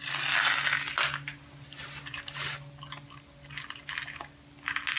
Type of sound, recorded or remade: recorded